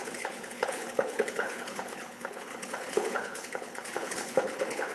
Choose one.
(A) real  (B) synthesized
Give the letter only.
B